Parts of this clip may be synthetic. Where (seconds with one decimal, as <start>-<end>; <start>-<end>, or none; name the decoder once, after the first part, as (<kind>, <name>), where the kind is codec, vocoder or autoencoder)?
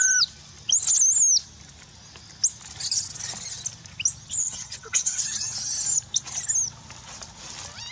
4.4-5.2 (vocoder, WaveNeXt)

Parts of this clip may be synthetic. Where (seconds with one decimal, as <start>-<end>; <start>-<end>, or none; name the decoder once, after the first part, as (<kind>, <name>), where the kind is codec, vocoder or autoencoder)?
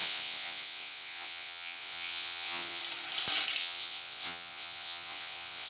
0.0-2.8 (vocoder, WaveNeXt); 3.6-5.7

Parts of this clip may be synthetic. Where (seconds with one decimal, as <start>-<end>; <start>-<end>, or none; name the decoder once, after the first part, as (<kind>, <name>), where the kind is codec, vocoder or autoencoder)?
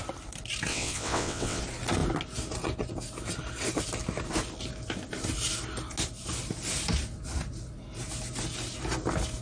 0.7-1.6 (vocoder, WaveNeXt)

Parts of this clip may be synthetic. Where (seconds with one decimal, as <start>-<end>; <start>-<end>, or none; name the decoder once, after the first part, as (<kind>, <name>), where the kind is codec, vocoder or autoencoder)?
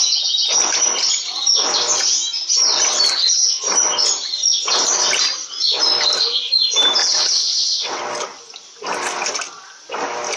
7.0-8.0 (vocoder, WaveNeXt)